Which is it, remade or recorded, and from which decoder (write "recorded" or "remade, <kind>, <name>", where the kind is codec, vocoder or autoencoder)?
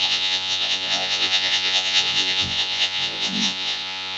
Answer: remade, vocoder, Vocos